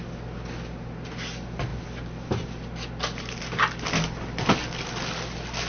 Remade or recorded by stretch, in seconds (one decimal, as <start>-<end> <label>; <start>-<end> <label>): 0.0-5.7 recorded